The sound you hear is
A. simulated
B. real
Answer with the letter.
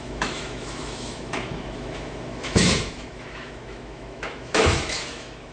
A